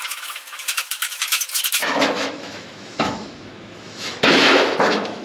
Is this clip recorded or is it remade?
remade